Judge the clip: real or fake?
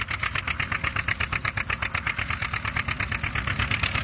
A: real